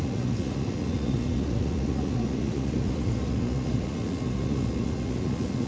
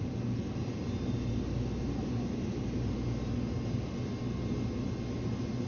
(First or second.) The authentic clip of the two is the second